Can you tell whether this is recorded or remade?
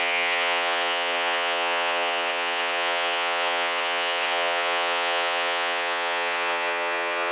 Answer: remade